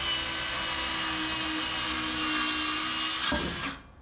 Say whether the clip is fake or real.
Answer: real